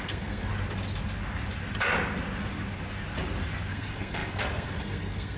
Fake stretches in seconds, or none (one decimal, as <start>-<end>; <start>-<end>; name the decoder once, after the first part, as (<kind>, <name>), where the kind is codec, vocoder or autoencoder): 0.0-0.5 (codec, SNAC); 3.7-5.4